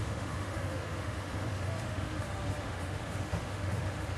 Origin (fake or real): fake